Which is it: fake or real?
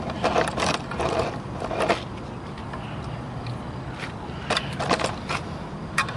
real